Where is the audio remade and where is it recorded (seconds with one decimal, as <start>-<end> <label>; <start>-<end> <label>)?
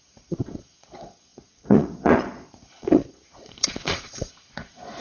0.0-5.0 remade